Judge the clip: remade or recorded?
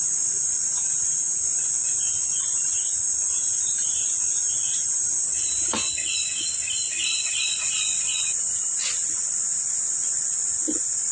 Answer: recorded